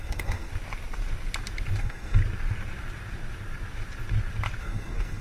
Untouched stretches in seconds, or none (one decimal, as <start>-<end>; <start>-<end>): 0.5-1.8; 2.2-4.6